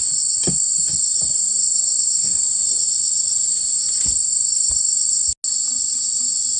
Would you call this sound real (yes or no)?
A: yes